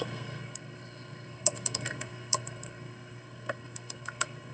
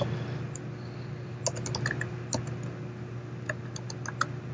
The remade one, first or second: first